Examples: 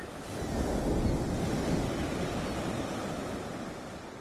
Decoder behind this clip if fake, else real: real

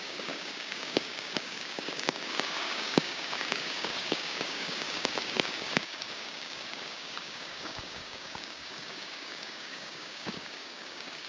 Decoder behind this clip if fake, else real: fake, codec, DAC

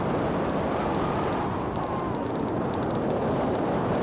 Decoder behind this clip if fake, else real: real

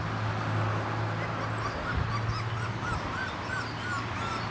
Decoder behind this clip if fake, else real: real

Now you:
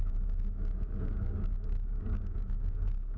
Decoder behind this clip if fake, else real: fake, codec, DAC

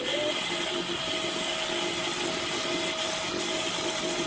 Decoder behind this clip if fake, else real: real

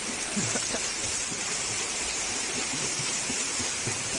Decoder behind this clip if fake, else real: fake, vocoder, BigVGAN v2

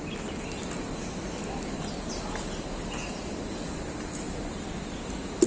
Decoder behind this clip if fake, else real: real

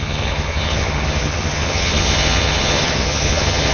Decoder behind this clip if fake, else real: fake, vocoder, HiFi-GAN